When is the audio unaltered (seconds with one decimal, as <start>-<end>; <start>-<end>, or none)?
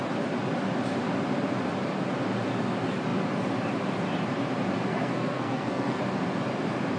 0.0-4.9; 6.0-7.0